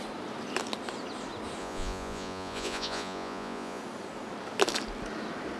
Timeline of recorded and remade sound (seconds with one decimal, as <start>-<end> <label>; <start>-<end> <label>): 0.0-1.6 recorded; 1.6-3.8 remade; 3.8-5.6 recorded